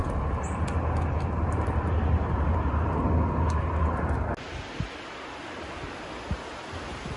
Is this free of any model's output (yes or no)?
yes